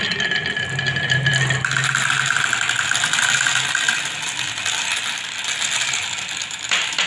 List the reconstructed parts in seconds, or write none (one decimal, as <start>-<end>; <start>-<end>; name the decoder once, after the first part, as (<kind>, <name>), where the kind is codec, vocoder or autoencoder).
none